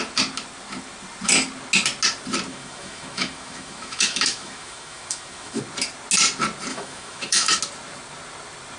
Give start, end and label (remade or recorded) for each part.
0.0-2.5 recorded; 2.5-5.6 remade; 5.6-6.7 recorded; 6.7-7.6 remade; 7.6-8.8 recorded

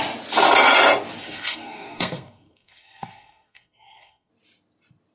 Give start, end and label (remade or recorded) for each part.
0.0-1.2 recorded; 1.2-4.3 remade; 4.3-5.1 recorded

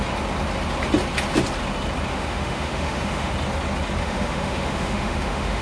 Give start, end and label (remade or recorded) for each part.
0.0-2.1 recorded; 2.1-3.3 remade; 3.3-4.0 recorded; 4.0-5.6 remade

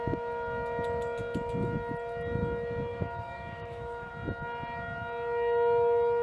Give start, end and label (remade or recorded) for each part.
0.0-2.9 recorded; 2.9-4.1 remade; 4.1-6.2 recorded